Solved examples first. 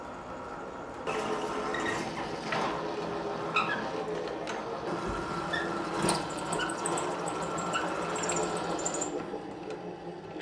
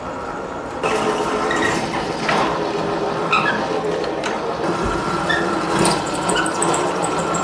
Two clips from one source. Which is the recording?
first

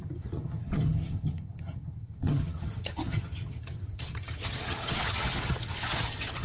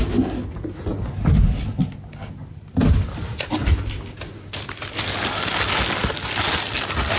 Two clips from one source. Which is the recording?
second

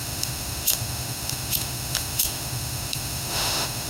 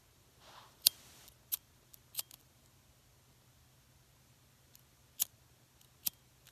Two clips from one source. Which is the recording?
second